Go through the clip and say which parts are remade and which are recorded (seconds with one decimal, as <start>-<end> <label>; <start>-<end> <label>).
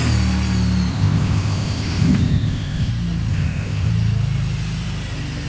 0.0-0.9 recorded; 0.9-2.9 remade; 2.9-3.3 recorded; 3.3-3.9 remade; 3.9-5.5 recorded